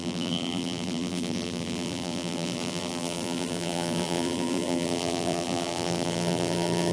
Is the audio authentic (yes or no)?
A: no